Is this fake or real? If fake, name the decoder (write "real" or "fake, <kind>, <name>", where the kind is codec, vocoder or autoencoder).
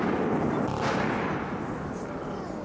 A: real